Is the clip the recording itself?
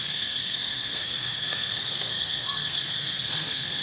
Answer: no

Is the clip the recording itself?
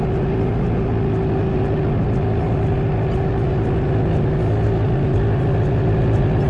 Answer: yes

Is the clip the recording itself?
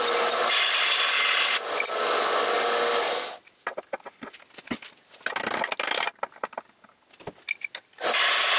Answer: yes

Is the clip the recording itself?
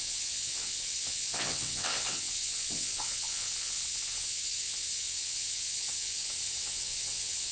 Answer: no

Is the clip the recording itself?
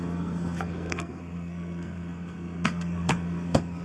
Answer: no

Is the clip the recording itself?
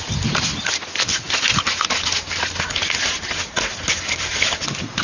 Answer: yes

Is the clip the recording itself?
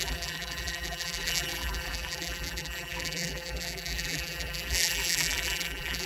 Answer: no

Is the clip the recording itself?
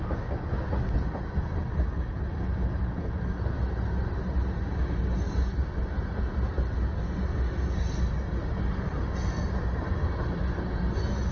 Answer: yes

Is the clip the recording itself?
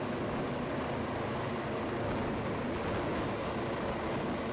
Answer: yes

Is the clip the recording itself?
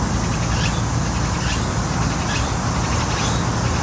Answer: yes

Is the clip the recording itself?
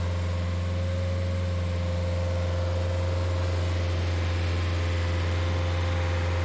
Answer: yes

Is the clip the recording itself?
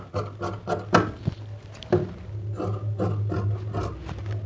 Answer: yes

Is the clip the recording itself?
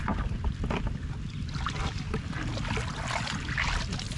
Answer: yes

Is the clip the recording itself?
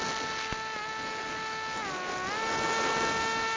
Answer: yes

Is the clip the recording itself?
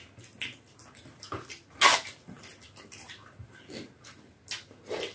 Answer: yes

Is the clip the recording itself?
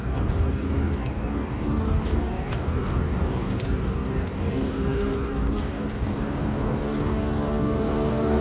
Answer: no